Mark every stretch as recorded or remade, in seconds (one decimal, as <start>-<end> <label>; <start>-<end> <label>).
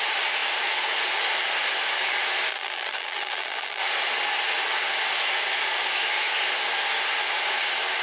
0.0-2.5 recorded; 2.5-3.8 remade; 3.8-8.0 recorded